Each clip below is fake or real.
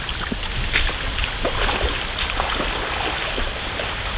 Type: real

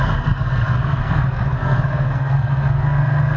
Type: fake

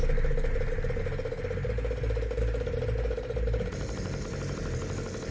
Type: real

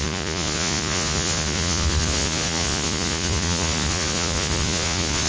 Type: fake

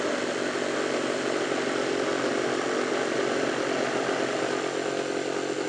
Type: real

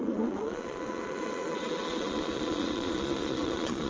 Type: fake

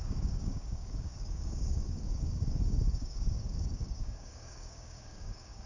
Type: fake